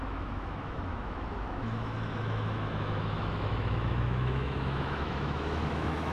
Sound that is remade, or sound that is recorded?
remade